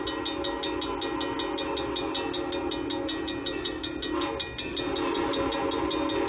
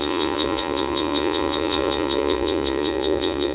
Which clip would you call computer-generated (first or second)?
second